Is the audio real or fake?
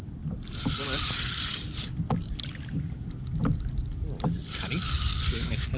real